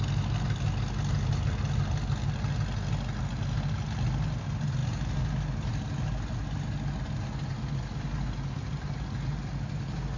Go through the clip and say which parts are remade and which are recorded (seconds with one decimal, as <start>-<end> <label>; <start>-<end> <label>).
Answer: 0.0-10.2 recorded